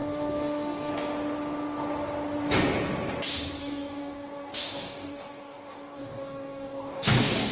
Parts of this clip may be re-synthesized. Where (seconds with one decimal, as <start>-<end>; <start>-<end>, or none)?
0.0-0.9; 3.6-7.5